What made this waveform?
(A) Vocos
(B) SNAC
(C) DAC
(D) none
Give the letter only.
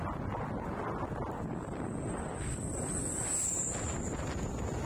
D